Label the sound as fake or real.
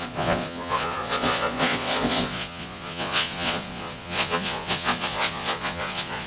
fake